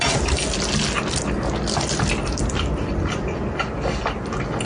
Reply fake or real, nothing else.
real